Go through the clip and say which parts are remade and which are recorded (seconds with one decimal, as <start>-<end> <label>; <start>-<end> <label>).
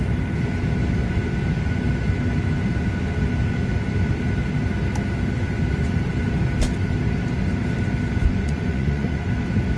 0.0-8.2 recorded; 8.2-9.3 remade; 9.3-9.8 recorded